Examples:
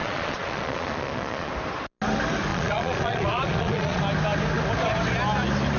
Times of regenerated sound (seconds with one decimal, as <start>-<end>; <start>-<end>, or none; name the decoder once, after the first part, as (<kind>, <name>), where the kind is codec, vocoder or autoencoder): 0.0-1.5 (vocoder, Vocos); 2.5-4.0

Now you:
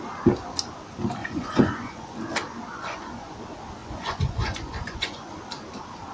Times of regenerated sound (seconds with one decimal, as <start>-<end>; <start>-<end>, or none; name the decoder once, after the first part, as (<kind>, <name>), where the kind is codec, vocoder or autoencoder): 1.2-2.2 (vocoder, Vocos); 2.7-3.3; 3.8-5.4

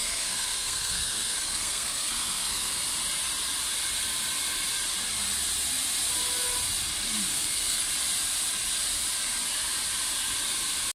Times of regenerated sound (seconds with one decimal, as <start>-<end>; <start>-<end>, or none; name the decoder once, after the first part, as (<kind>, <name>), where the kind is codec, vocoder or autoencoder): 0.0-2.7 (codec, SNAC); 7.3-7.8

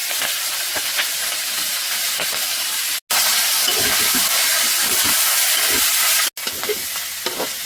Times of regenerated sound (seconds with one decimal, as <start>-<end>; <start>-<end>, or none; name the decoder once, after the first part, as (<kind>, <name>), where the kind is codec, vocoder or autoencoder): none

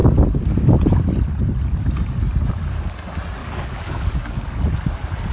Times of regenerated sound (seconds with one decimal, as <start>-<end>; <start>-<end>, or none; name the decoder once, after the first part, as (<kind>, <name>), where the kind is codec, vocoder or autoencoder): 3.4-4.6 (codec, DAC)